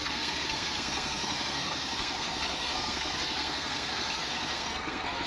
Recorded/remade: remade